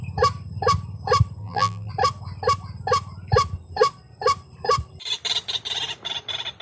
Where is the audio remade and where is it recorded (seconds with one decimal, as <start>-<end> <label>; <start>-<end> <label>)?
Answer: 0.0-1.4 recorded; 1.4-1.9 remade; 1.9-6.6 recorded